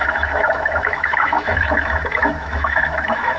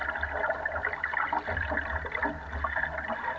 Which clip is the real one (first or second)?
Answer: second